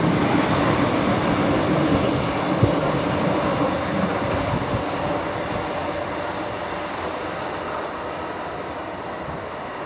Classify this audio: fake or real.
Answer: real